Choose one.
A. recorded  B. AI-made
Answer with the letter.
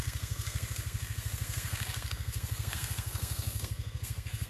B